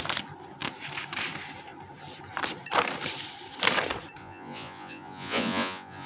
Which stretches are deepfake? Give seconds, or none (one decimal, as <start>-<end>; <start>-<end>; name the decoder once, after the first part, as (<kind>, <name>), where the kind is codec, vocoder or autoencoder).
4.2-6.1 (vocoder, Vocos)